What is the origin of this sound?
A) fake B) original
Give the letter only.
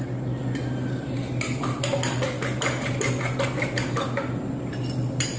B